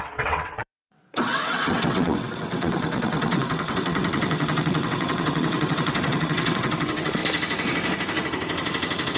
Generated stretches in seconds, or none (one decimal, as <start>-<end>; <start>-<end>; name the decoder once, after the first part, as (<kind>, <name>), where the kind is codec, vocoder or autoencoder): 0.0-7.2 (vocoder, WaveNeXt)